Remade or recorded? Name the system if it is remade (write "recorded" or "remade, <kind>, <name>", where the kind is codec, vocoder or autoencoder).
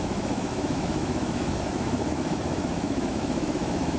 remade, autoencoder, DAC-VAE